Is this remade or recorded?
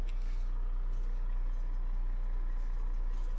recorded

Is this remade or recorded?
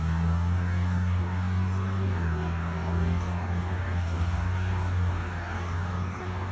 remade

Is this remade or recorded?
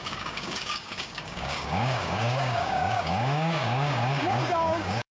remade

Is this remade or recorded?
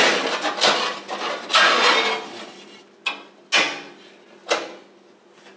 recorded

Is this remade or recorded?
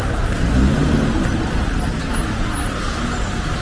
recorded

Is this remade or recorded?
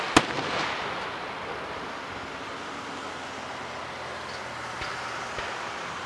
recorded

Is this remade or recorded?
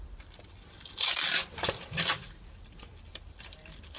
remade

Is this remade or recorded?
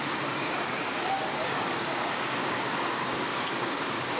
remade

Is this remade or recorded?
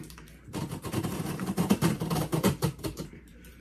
remade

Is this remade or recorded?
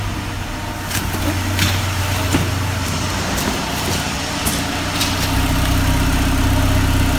recorded